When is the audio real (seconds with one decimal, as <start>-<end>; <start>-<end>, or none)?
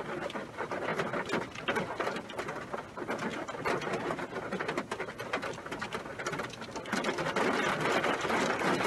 0.0-8.9